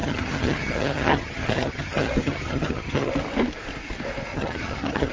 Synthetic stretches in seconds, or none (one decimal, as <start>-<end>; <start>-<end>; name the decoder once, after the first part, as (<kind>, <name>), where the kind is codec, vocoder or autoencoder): 0.0-3.1 (vocoder, HiFi-GAN); 4.3-5.1